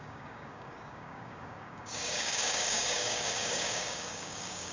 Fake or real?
fake